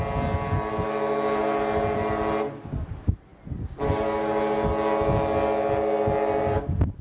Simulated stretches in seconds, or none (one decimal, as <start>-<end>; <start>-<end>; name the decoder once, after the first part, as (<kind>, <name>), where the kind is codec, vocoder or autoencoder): none